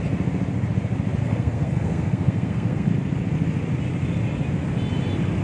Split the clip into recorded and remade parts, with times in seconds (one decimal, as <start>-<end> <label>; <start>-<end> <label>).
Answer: 0.0-1.2 recorded; 1.2-2.9 remade; 2.9-5.4 recorded